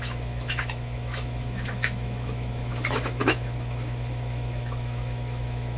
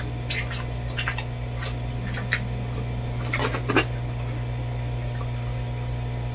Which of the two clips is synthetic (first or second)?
first